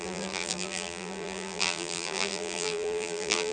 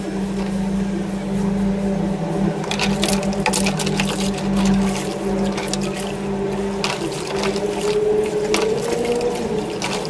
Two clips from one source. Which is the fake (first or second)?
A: first